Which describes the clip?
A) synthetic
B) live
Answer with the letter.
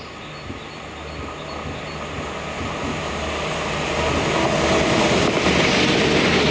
B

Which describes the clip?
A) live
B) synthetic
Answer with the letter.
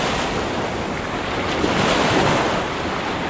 A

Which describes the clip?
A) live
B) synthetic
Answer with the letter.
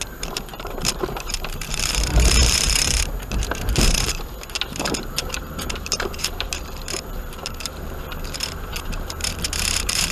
B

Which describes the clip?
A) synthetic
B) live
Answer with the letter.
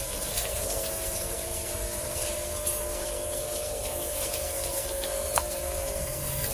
A